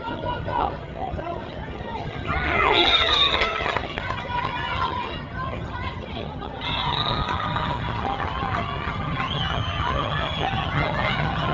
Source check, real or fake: fake